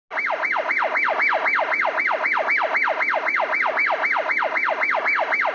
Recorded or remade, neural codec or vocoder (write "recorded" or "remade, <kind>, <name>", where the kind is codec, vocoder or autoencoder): recorded